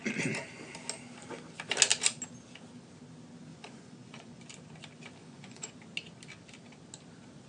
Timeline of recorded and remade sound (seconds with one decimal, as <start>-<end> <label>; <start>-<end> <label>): 0.0-3.5 recorded; 3.5-4.4 remade; 4.4-5.2 recorded; 5.2-5.7 remade; 5.7-7.5 recorded